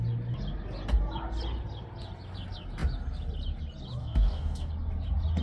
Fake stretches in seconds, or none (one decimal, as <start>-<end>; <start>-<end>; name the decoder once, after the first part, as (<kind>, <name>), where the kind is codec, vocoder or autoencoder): 4.0-4.7 (codec, DAC)